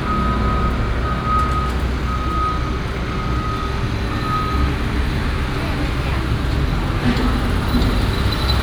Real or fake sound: real